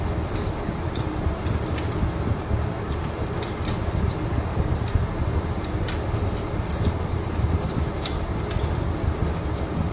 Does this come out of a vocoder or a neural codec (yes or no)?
no